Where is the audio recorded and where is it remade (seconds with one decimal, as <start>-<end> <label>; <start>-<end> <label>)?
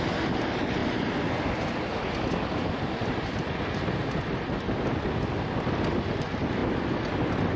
0.0-7.6 recorded